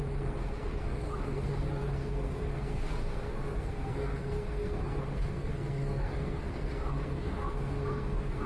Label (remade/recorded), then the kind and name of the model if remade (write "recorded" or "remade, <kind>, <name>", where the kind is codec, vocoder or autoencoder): remade, codec, SNAC